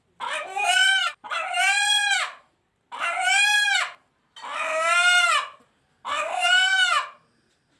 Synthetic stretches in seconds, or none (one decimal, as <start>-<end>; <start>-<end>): none